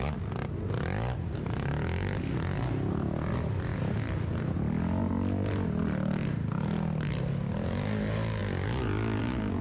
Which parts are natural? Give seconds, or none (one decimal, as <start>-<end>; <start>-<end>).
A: 0.0-9.6